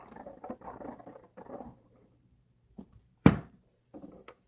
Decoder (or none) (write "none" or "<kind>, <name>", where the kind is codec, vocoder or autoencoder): vocoder, BigVGAN v2